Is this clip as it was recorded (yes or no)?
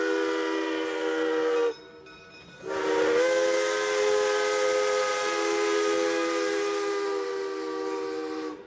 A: yes